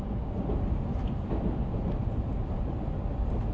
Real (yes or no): yes